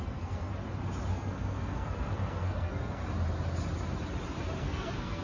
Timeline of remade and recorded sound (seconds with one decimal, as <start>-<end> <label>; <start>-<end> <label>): 0.0-0.5 remade; 0.5-1.1 recorded; 1.1-3.0 remade; 3.0-4.6 recorded; 4.6-5.2 remade